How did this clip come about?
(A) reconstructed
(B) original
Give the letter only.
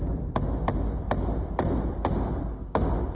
B